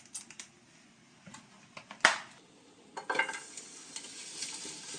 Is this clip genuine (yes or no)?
yes